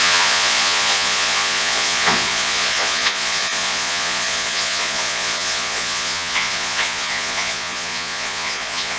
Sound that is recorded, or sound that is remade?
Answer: remade